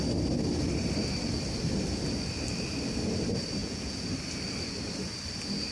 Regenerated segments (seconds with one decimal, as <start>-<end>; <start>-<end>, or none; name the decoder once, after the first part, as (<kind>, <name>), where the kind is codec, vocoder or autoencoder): 3.6-4.1 (vocoder, Vocos)